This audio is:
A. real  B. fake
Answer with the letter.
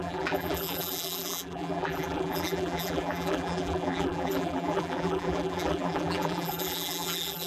B